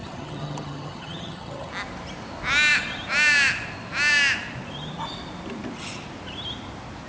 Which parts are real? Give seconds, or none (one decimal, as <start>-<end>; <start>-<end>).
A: 1.7-7.1